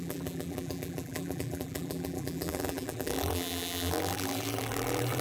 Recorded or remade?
remade